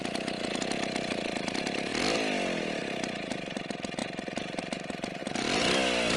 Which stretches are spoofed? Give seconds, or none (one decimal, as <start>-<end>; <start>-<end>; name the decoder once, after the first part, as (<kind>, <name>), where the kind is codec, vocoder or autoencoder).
none